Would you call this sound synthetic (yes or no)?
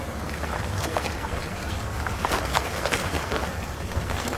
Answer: yes